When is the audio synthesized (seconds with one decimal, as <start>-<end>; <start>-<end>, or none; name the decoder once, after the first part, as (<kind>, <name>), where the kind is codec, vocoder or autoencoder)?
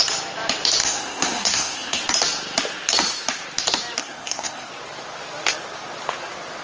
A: 0.8-2.0 (codec, SNAC); 4.0-4.7